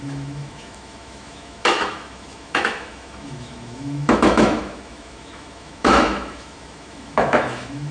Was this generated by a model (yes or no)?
yes